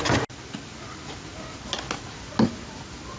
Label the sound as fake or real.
real